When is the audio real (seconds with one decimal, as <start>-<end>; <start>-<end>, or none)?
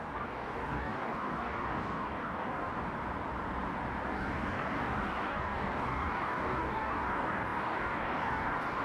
2.7-4.1